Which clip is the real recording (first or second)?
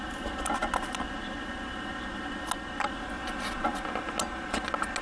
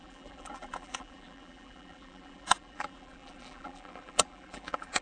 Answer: first